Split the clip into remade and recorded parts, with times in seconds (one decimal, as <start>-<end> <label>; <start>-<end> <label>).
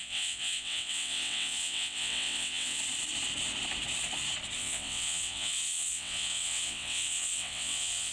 0.0-2.8 remade; 2.8-4.6 recorded; 4.6-8.1 remade